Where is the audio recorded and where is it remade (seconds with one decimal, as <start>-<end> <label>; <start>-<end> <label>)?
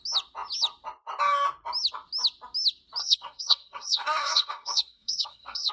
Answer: 0.0-3.0 recorded; 3.0-5.7 remade